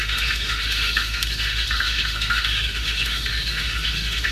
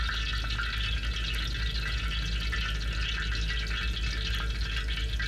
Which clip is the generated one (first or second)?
first